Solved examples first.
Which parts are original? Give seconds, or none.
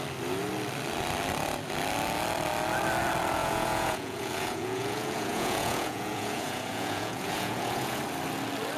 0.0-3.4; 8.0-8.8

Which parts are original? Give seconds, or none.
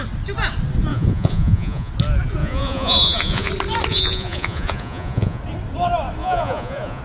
0.0-0.9; 1.9-2.4; 3.5-3.9; 5.4-6.2